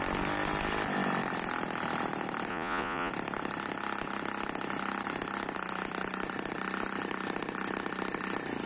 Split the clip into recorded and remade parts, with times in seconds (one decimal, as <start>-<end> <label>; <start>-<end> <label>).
0.0-2.5 recorded; 2.5-3.1 remade; 3.1-8.7 recorded